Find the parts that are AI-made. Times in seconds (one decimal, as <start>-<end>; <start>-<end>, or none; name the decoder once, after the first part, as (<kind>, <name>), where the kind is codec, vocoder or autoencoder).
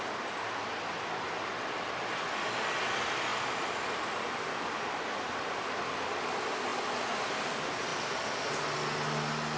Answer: none